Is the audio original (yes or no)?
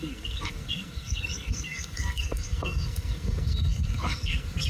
no